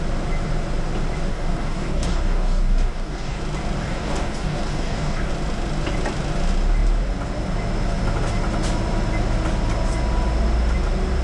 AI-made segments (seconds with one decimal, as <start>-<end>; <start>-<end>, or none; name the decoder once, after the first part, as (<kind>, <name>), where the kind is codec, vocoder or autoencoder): 1.3-3.4 (codec, DAC); 3.8-5.3

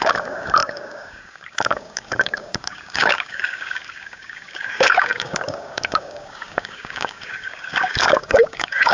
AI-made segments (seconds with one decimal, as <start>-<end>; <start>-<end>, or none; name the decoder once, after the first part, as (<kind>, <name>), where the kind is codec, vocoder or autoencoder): 0.0-8.9 (codec, DAC)

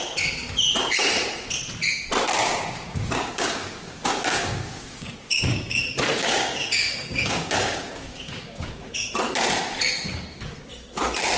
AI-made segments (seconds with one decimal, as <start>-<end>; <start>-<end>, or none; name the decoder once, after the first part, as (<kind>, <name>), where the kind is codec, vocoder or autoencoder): 2.4-5.8 (codec, DAC); 6.2-9.1